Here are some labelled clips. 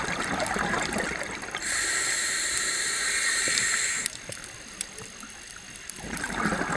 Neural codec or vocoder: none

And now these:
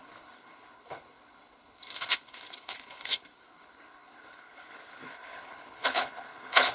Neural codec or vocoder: codec, HILCodec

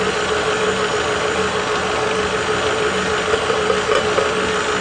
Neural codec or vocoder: none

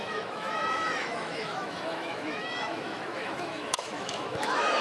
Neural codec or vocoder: autoencoder, DAC-VAE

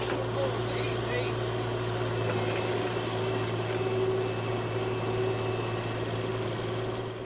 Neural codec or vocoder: none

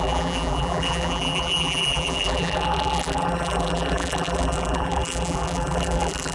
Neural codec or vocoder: vocoder, BigVGAN v2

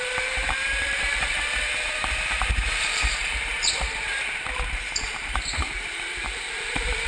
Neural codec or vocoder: vocoder, BigVGAN v2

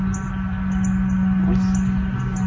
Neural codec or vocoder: none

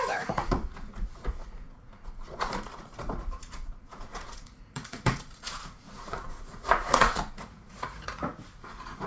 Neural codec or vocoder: vocoder, Vocos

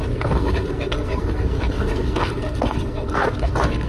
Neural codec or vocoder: codec, SNAC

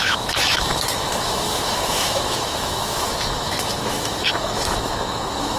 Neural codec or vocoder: autoencoder, DAC-VAE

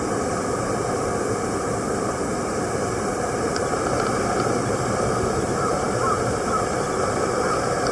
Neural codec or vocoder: vocoder, BigVGAN v2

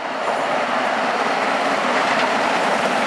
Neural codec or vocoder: none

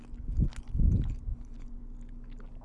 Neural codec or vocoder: none